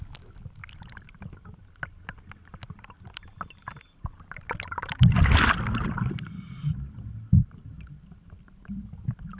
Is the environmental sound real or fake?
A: real